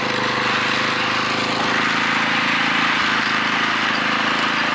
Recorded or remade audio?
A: recorded